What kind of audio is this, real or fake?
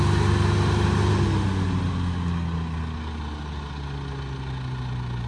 real